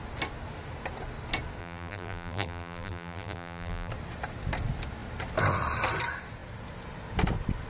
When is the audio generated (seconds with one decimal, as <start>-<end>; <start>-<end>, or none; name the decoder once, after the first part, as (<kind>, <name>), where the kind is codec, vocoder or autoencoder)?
1.6-3.9 (vocoder, BigVGAN v2)